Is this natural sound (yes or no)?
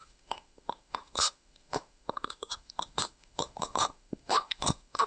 no